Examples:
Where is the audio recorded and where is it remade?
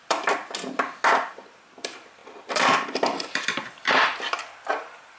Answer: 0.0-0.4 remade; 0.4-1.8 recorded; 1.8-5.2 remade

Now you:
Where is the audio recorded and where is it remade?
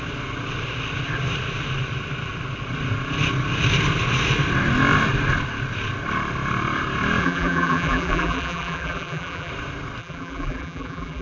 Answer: 0.0-7.2 recorded; 7.2-9.5 remade; 9.5-10.0 recorded; 10.0-11.2 remade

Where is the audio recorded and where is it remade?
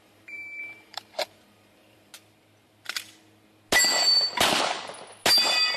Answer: 0.0-2.1 remade; 2.1-5.8 recorded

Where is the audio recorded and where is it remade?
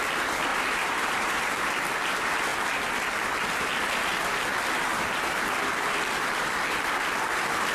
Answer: 0.0-0.5 recorded; 0.5-1.4 remade; 1.4-4.9 recorded; 4.9-5.4 remade; 5.4-7.7 recorded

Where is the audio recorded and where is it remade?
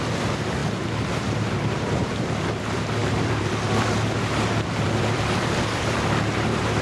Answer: 0.0-0.6 remade; 0.6-1.2 recorded; 1.2-6.8 remade